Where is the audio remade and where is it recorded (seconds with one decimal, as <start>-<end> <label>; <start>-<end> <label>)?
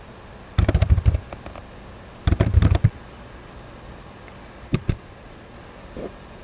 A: 0.0-4.7 recorded; 4.7-5.5 remade; 5.5-6.4 recorded